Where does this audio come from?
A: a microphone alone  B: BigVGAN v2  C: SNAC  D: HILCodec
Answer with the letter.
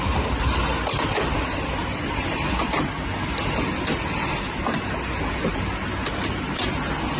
A